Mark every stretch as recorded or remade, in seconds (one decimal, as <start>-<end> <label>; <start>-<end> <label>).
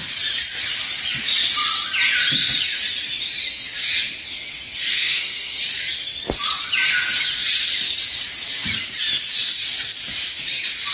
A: 0.0-4.9 recorded; 4.9-5.6 remade; 5.6-10.9 recorded